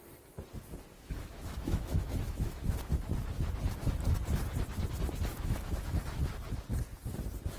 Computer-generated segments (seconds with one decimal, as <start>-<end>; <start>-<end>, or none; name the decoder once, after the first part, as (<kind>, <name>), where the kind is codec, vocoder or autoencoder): 0.9-2.9 (autoencoder, DAC-VAE); 5.3-6.0